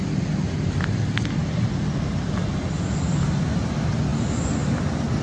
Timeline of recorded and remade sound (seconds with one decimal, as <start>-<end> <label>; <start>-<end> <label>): 0.0-5.2 recorded